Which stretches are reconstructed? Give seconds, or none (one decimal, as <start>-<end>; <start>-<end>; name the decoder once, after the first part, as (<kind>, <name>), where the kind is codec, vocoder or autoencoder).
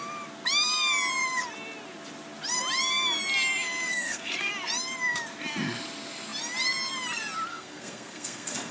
3.9-4.5 (codec, SNAC); 7.5-8.7